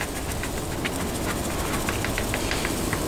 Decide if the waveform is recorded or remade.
recorded